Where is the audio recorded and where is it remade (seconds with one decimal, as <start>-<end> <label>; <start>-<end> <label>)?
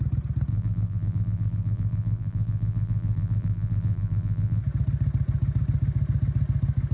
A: 0.0-0.5 recorded; 0.5-4.6 remade; 4.6-6.9 recorded